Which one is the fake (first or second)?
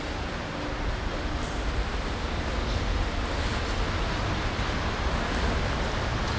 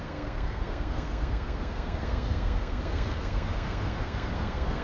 second